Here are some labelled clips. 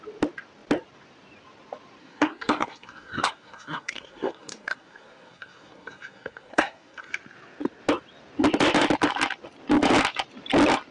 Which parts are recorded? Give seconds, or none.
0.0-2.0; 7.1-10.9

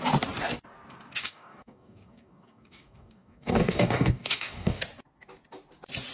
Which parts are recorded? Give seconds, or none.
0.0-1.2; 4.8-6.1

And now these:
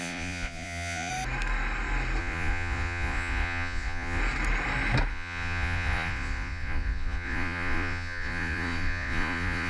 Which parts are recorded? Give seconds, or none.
1.1-2.2; 4.2-5.1

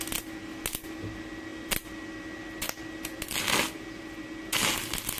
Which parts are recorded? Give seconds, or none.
0.0-5.2

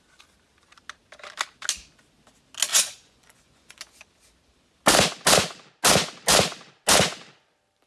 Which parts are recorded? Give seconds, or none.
0.0-2.7; 3.8-7.9

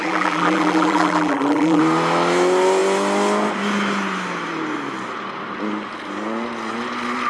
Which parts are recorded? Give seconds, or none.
1.8-7.3

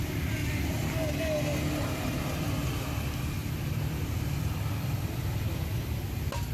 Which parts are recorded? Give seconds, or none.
0.0-0.4; 1.2-3.4; 5.2-6.5

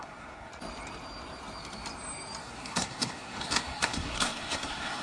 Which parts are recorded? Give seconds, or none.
0.5-2.4